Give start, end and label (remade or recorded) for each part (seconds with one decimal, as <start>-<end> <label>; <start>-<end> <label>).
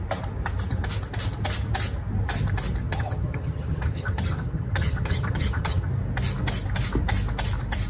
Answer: 0.0-2.8 recorded; 2.8-5.9 remade; 5.9-7.9 recorded